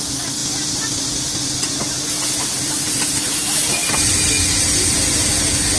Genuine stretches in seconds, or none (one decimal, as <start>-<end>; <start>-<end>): 0.0-5.8

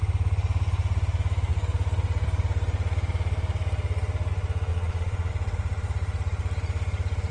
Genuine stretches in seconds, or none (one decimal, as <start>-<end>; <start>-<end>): 0.0-4.7; 5.3-7.3

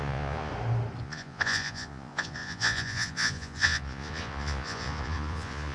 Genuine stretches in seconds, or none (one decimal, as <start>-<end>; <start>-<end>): 0.5-1.0

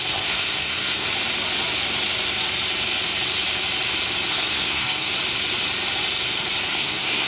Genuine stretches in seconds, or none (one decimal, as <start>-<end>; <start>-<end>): 1.1-4.3; 5.1-6.7

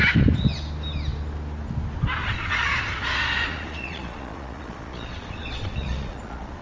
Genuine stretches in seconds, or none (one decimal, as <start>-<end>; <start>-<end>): 0.0-2.2